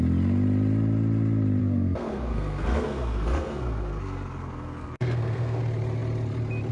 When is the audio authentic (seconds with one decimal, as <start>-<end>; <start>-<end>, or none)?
0.0-1.6; 5.6-6.7